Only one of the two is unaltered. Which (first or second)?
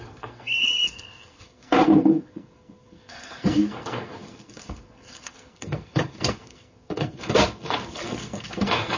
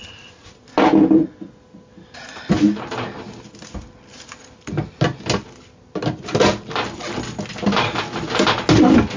second